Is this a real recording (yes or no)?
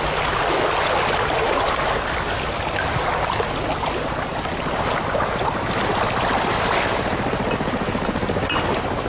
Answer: yes